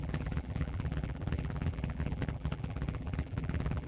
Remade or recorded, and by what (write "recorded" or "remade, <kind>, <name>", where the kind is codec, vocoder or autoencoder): remade, vocoder, BigVGAN v2